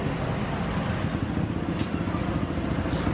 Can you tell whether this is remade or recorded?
recorded